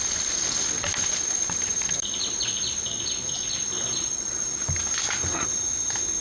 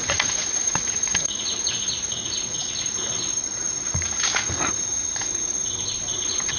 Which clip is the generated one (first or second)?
second